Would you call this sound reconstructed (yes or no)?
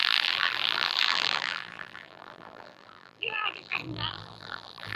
yes